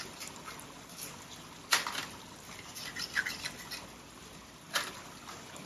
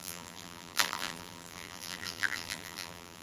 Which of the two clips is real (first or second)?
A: first